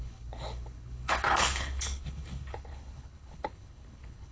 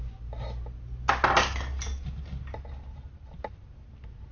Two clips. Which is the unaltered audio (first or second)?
second